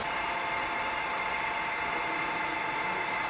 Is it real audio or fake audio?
real